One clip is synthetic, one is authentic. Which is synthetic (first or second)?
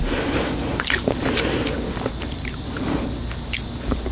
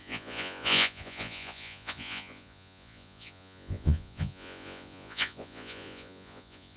second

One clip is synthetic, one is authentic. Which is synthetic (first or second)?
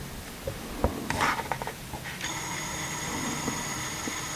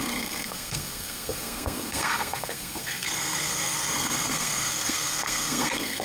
second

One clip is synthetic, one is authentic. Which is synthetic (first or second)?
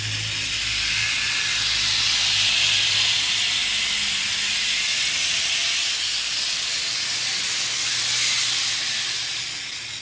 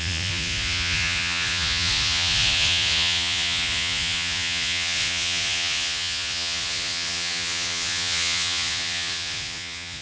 second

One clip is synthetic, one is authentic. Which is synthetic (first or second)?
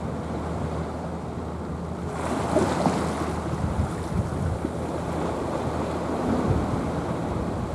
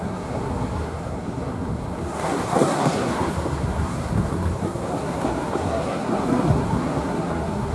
second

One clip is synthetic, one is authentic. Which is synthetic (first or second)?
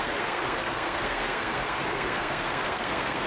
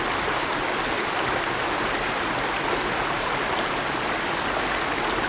first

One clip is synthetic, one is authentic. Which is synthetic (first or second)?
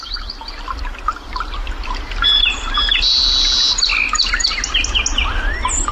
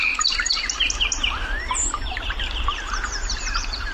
second